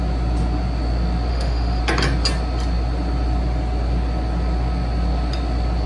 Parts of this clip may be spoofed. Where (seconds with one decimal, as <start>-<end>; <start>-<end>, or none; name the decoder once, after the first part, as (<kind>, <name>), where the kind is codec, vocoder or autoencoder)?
1.3-1.8 (autoencoder, DAC-VAE)